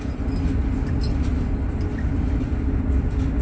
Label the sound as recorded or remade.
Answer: recorded